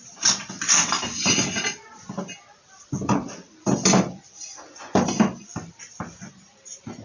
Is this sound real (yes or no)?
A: yes